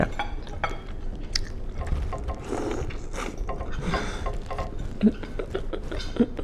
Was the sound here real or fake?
real